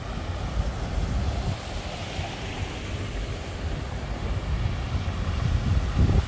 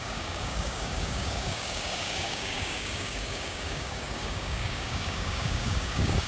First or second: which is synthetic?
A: second